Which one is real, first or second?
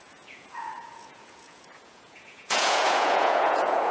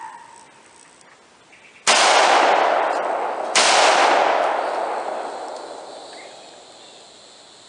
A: second